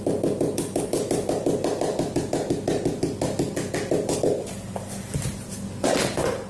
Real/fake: real